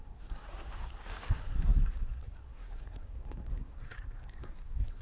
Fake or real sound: fake